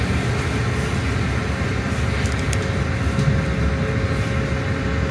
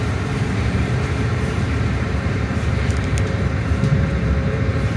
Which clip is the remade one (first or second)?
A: second